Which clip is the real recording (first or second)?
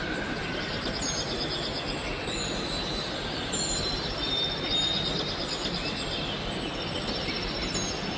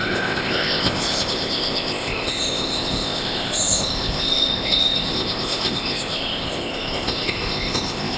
first